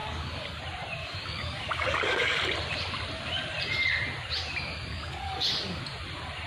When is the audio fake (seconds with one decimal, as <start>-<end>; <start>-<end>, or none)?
0.0-0.6; 1.0-2.4; 4.9-5.8